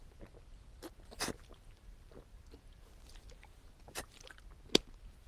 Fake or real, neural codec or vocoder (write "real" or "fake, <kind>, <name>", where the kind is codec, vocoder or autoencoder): real